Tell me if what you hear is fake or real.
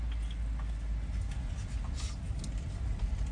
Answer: real